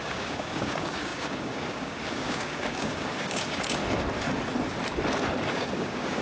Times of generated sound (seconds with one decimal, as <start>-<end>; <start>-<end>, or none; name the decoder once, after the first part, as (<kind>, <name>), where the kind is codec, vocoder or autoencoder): 0.0-3.8 (codec, DAC); 5.5-6.2